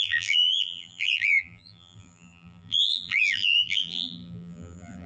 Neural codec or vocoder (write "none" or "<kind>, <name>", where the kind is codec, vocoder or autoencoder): vocoder, BigVGAN v2